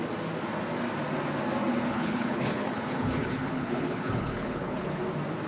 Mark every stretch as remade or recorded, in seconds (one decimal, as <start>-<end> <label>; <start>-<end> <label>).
0.0-1.7 recorded; 1.7-5.0 remade; 5.0-5.5 recorded